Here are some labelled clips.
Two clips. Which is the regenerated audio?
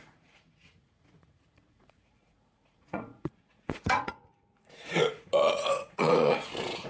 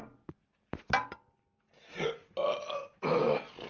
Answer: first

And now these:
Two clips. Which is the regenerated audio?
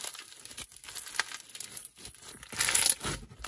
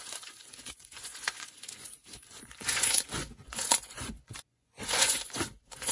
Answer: second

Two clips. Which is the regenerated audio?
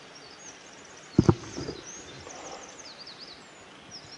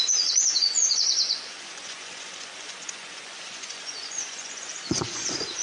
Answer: second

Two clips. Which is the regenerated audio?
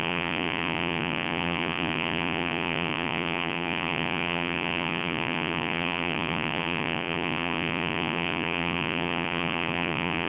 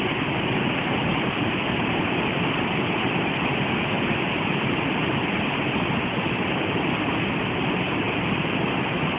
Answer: first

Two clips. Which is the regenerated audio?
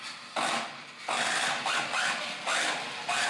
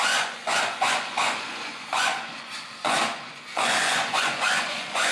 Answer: second